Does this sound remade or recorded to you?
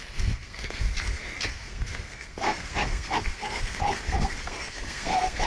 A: remade